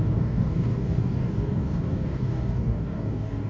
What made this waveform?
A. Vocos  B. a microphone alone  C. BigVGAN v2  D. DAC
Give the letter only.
D